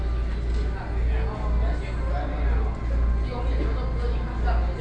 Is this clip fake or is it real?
real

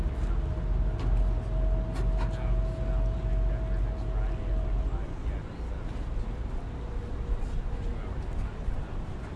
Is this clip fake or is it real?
real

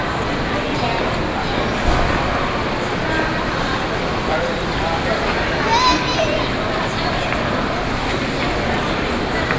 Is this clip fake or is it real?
real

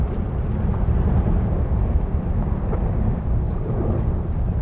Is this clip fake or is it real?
fake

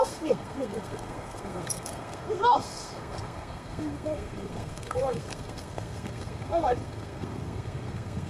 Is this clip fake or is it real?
fake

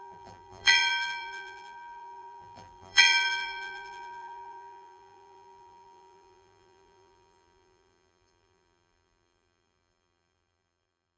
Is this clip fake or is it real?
fake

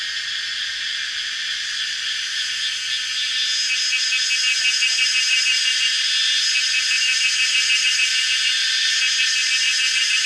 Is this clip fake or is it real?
real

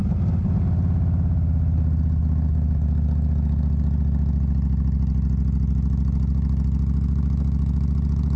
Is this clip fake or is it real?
real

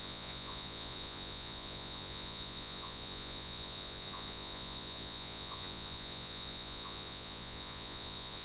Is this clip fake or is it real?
fake